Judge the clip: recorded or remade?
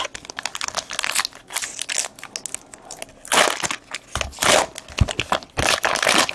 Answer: recorded